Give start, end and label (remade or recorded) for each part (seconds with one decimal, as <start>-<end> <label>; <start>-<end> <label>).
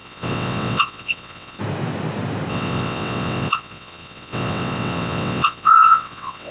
0.0-1.6 remade; 1.6-2.5 recorded; 2.5-6.5 remade